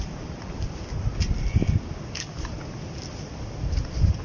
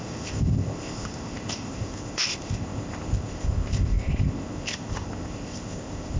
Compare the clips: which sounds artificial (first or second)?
second